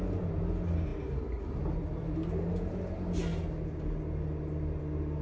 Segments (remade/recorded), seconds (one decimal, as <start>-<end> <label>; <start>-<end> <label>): 0.0-5.2 recorded